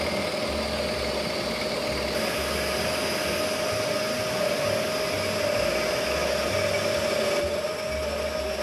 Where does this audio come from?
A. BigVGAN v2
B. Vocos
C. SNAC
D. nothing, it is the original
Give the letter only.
D